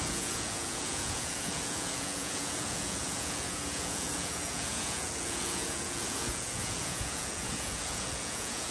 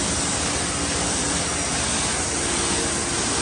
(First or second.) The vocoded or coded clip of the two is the first